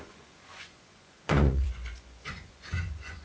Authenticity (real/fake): fake